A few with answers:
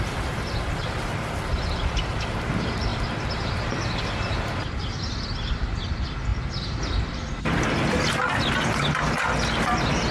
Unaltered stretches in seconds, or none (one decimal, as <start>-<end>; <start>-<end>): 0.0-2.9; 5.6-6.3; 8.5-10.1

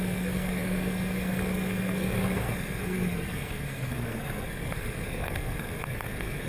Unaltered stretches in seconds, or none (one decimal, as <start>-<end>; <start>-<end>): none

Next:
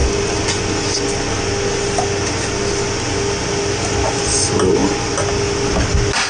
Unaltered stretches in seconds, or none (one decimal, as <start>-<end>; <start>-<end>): 0.0-6.3

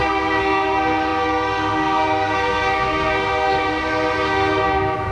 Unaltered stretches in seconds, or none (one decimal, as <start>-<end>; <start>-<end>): none